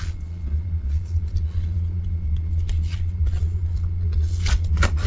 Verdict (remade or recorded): remade